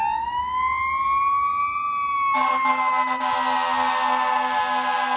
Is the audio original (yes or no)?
yes